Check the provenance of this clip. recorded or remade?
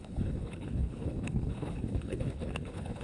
remade